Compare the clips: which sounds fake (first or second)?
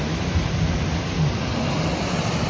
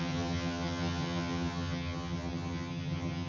second